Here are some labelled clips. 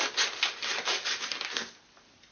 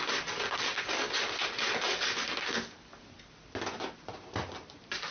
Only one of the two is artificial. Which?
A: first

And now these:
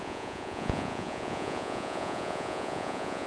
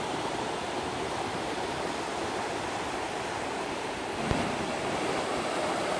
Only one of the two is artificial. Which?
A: first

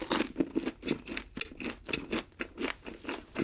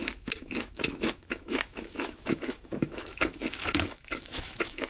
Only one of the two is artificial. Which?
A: second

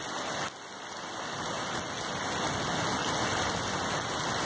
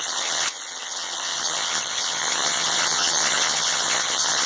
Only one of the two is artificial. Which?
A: second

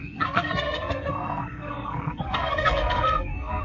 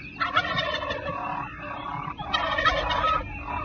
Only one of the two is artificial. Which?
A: first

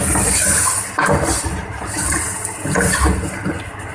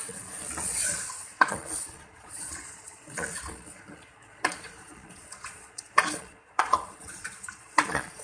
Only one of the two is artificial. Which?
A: second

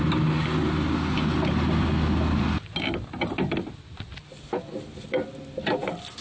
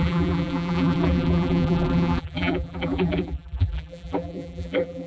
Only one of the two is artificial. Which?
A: second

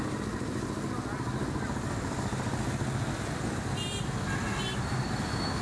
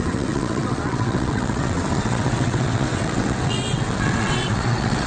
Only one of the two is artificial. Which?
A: second